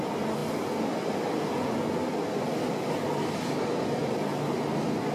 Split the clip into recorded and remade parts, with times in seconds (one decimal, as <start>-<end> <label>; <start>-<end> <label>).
0.0-5.1 recorded